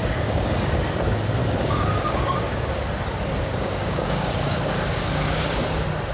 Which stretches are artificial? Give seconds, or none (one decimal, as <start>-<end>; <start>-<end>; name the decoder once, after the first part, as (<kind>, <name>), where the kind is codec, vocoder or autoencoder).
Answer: 0.0-0.7 (codec, DAC); 1.4-2.7; 3.3-5.6